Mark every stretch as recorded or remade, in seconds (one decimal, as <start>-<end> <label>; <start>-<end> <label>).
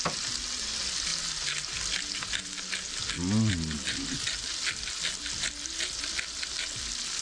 0.0-7.2 recorded